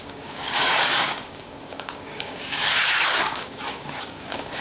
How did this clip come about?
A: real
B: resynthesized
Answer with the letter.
B